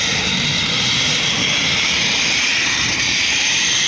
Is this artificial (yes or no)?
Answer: yes